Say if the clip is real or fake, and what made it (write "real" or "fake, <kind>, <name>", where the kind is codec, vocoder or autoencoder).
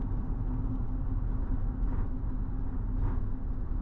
real